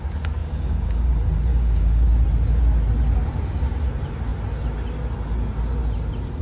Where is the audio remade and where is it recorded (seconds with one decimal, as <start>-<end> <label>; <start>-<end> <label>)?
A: 0.0-0.4 recorded; 0.4-1.1 remade; 1.1-1.5 recorded; 1.5-2.1 remade; 2.1-6.4 recorded